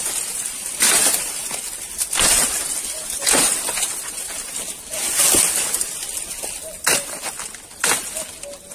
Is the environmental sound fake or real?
real